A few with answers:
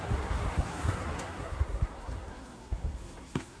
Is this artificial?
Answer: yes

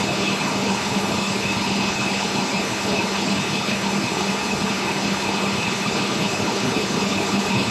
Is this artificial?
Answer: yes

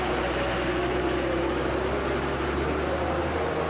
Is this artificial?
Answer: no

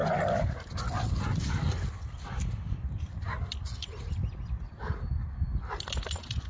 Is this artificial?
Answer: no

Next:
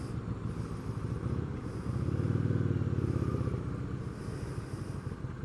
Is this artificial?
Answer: no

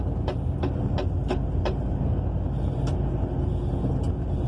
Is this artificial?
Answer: no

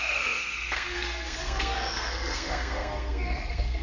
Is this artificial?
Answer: yes